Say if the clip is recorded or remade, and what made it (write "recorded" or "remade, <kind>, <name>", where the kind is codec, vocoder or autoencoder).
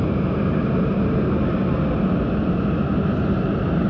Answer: recorded